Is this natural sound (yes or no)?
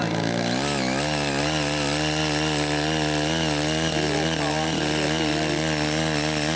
yes